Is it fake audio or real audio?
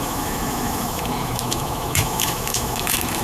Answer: fake